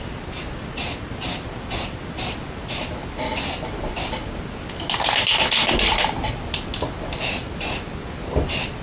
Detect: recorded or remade recorded